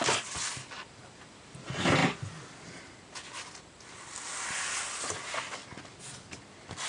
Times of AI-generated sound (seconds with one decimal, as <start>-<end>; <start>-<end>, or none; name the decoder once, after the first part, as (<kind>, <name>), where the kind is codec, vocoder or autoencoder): none